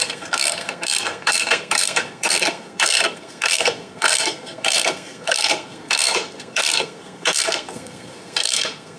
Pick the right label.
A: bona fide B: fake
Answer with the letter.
B